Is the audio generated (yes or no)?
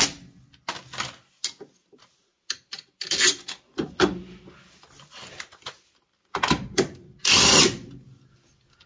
no